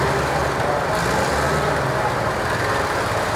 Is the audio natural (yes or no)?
yes